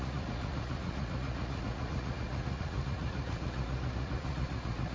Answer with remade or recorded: remade